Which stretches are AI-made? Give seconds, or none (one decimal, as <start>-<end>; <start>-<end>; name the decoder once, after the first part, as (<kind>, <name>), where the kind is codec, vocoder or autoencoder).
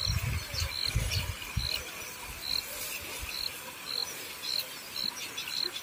none